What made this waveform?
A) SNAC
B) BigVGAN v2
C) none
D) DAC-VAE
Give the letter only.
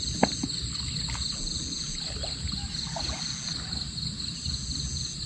C